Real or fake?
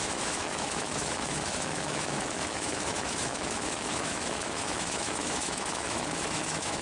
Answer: fake